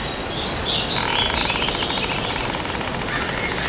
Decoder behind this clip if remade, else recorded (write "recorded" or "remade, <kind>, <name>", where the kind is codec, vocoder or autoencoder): recorded